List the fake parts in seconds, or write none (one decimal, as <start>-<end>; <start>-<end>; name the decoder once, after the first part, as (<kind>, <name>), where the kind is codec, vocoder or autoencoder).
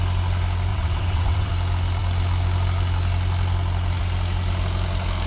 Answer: 0.7-1.5 (vocoder, WaveNeXt)